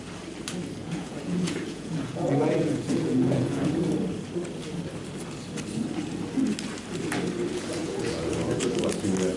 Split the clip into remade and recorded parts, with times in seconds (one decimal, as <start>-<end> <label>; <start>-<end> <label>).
0.0-0.8 recorded; 0.8-3.7 remade; 3.7-7.8 recorded; 7.8-8.3 remade; 8.3-9.4 recorded